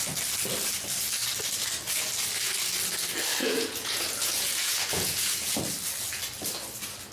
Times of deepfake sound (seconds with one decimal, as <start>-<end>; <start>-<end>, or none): 3.4-5.6